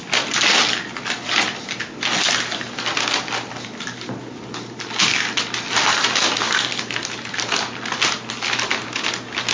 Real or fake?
real